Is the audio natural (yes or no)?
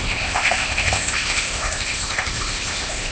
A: no